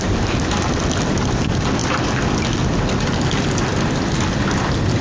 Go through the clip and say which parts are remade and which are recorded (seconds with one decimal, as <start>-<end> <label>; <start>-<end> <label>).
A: 0.0-5.0 recorded